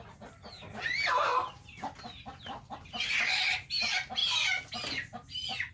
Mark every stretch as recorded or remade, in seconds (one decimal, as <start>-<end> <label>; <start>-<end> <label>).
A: 0.0-5.7 recorded